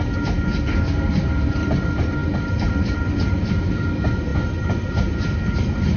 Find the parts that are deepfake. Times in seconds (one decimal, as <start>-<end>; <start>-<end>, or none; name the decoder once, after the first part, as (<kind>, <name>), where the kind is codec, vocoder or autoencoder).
none